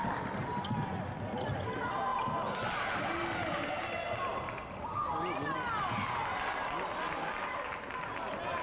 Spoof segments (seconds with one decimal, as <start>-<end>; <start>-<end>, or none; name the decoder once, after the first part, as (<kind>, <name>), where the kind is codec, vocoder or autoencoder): 4.3-5.0 (vocoder, BigVGAN v2); 6.9-7.7